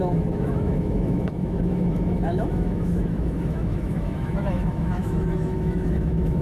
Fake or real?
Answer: fake